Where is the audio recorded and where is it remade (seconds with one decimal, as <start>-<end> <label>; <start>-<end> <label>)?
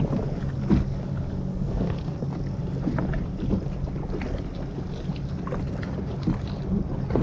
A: 0.0-1.5 recorded; 1.5-2.2 remade; 2.2-7.2 recorded